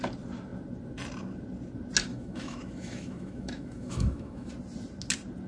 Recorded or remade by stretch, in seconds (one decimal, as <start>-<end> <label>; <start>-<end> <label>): 0.0-2.1 recorded; 2.1-4.5 remade; 4.5-5.5 recorded